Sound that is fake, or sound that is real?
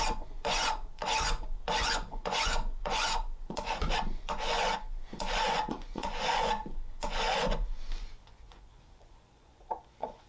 fake